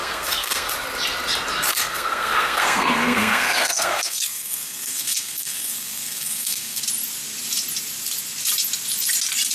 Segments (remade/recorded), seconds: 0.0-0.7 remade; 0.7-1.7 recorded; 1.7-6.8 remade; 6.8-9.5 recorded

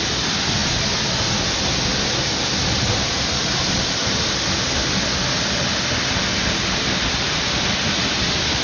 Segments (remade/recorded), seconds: 0.0-8.6 recorded

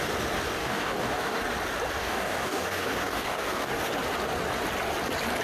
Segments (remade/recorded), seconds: 0.0-0.6 recorded; 0.6-1.4 remade; 1.4-2.0 recorded; 2.0-3.9 remade; 3.9-5.4 recorded